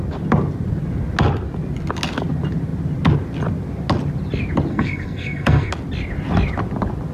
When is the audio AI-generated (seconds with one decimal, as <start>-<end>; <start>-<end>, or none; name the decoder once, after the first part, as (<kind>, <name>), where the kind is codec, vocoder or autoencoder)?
4.7-5.7 (codec, SNAC)